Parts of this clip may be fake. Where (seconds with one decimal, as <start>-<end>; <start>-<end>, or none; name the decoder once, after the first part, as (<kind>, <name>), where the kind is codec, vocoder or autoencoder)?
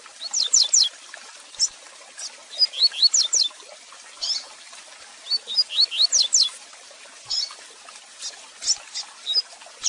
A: none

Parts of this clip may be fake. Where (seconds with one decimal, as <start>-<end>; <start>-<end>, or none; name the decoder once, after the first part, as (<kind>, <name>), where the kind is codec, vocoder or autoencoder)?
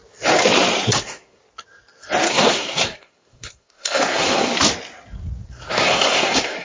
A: 1.0-1.4 (codec, SNAC); 2.3-4.5; 5.5-6.6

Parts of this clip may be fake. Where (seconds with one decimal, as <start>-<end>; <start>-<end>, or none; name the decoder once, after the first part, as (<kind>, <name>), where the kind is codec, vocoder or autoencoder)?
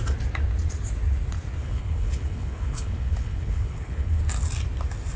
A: 1.6-4.2 (codec, HILCodec)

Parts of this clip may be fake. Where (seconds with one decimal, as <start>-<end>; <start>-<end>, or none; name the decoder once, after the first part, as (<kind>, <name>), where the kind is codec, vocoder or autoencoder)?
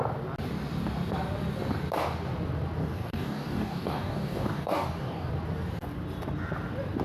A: 2.8-5.3 (codec, DAC)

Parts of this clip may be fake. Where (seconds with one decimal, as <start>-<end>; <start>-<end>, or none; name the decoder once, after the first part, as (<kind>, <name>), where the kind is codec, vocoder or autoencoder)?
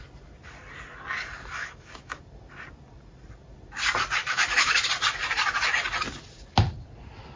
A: 1.6-2.2 (autoencoder, DAC-VAE); 4.2-4.8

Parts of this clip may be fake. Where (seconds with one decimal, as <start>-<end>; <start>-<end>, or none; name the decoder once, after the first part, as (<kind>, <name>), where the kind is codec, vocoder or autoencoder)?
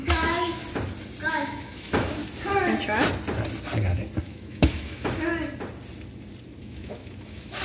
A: 0.0-0.6 (autoencoder, DAC-VAE); 1.3-2.2; 4.2-5.3; 6.6-7.6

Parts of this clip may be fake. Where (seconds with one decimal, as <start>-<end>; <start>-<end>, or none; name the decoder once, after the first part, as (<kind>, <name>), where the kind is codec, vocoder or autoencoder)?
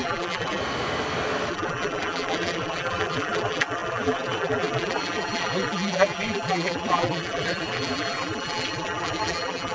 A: 0.0-0.6 (vocoder, BigVGAN v2); 1.5-9.7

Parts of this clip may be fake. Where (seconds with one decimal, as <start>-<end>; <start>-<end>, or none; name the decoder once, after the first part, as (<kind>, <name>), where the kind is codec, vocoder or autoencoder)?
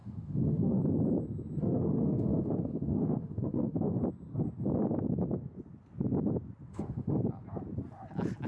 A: 0.0-0.8 (autoencoder, DAC-VAE); 1.6-4.0; 6.7-7.2